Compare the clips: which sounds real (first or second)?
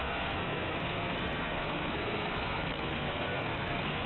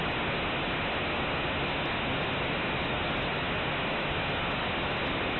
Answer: second